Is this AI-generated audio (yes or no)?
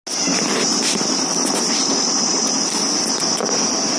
no